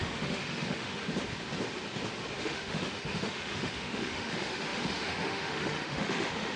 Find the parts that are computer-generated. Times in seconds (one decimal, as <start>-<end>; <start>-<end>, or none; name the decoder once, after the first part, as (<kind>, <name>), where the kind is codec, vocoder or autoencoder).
0.0-1.0 (autoencoder, DAC-VAE); 2.4-6.6